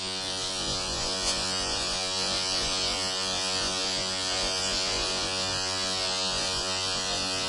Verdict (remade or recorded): remade